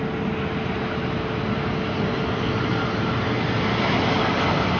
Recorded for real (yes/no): yes